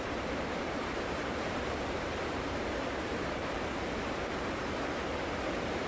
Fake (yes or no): yes